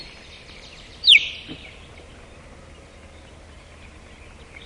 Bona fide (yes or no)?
yes